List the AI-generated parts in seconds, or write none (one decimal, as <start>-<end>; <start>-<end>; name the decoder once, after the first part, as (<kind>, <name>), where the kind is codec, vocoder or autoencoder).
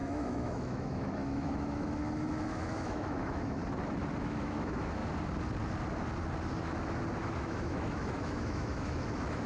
0.0-3.6 (autoencoder, DAC-VAE); 4.2-5.0; 7.4-9.5